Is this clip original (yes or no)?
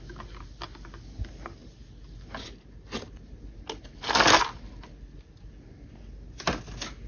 yes